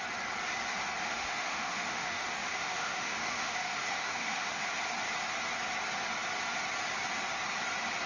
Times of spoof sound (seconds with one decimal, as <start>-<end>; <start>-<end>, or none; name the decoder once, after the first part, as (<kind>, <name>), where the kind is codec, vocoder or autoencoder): 1.0-4.7 (autoencoder, DAC-VAE)